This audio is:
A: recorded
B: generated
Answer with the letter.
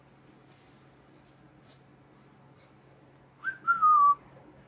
A